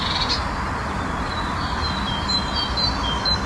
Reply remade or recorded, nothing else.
recorded